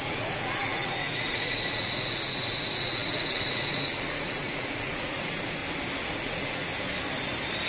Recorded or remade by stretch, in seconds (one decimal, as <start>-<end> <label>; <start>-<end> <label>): 0.0-5.6 remade; 5.6-6.1 recorded; 6.1-6.7 remade; 6.7-7.7 recorded